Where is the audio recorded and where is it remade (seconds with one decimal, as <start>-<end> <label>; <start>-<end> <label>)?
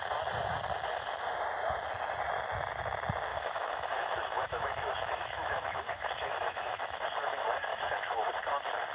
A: 0.0-3.3 recorded; 3.3-7.0 remade; 7.0-7.7 recorded; 7.7-8.3 remade; 8.3-8.9 recorded